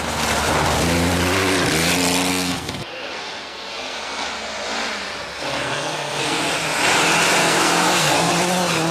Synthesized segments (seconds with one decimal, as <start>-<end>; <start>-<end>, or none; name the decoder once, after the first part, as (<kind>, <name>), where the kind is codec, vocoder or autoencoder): 2.3-4.3 (codec, SNAC); 5.3-6.4; 7.4-8.3